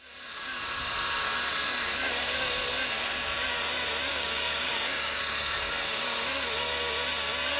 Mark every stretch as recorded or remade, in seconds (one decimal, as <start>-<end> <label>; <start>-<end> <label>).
0.0-4.1 recorded; 4.1-5.2 remade; 5.2-7.6 recorded